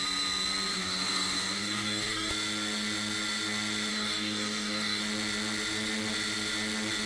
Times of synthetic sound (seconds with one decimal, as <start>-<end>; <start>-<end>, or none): 0.7-2.3; 3.9-5.0